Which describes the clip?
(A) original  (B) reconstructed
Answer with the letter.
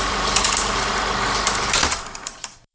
B